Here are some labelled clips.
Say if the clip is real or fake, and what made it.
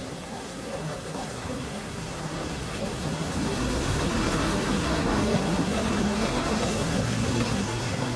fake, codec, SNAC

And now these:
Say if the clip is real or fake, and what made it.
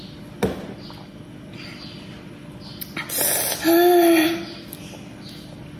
real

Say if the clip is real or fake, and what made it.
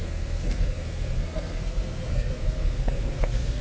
fake, codec, SNAC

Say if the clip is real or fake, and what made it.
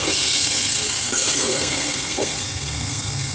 fake, codec, SNAC